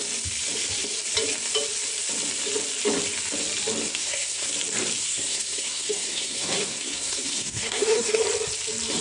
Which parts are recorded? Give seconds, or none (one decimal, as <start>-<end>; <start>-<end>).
0.0-3.9; 4.5-5.0; 8.2-9.0